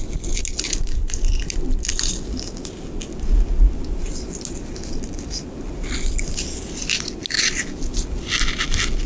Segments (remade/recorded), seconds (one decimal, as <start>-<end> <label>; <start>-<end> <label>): 0.0-9.1 recorded